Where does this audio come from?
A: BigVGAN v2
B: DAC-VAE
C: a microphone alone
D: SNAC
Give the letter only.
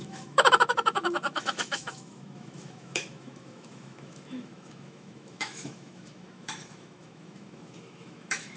B